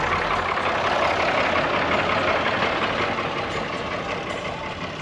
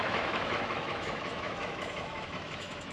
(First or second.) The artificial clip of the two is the second